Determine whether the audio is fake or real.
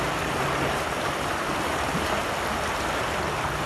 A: real